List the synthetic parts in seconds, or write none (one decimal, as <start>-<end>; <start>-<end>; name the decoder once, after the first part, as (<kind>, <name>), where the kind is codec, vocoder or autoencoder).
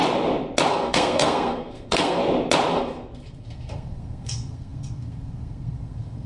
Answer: 0.7-2.2 (codec, SNAC); 2.7-6.3